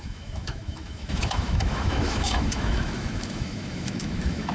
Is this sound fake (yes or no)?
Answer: yes